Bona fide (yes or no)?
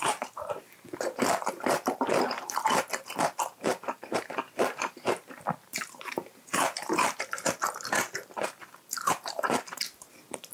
no